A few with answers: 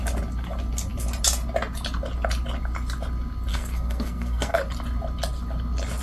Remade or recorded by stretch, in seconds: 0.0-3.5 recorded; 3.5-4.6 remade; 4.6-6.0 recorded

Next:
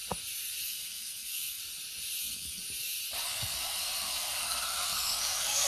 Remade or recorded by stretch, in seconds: 0.0-0.6 recorded; 0.6-1.6 remade; 1.6-2.2 recorded; 2.2-2.6 remade; 2.6-3.2 recorded; 3.2-5.7 remade